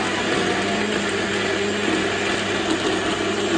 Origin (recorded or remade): recorded